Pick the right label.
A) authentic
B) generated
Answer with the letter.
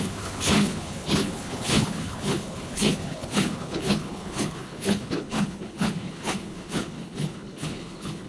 B